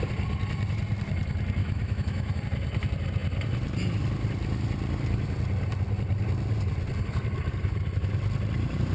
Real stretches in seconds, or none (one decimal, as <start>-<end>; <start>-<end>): 0.0-1.6; 2.4-8.9